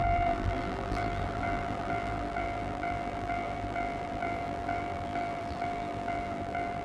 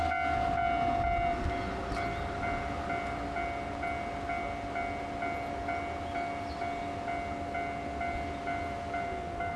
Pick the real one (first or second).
second